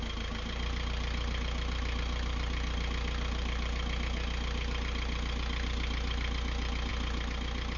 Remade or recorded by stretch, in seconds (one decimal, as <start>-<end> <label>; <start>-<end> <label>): 0.0-7.8 recorded

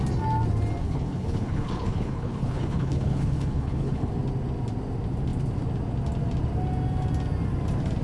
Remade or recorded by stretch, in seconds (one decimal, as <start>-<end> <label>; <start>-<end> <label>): 0.0-0.8 recorded; 0.8-4.1 remade; 4.1-8.0 recorded

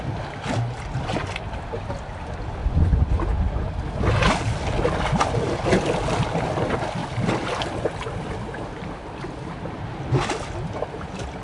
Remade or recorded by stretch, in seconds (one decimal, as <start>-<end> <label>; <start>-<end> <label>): 0.0-2.6 recorded; 2.6-3.1 remade; 3.1-11.4 recorded